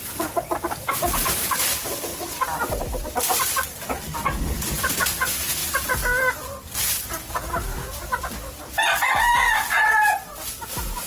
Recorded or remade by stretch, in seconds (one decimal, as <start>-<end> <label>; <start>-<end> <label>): 0.0-5.6 remade; 5.6-8.2 recorded; 8.2-11.1 remade